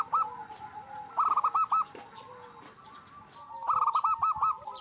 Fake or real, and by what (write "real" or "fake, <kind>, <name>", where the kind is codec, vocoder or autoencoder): real